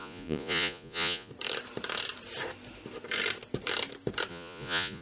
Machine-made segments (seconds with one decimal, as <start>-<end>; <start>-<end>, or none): 0.0-1.3; 4.3-5.0